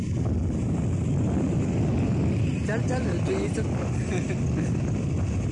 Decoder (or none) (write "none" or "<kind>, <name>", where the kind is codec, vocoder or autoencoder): none